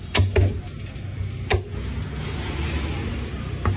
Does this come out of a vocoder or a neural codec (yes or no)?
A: no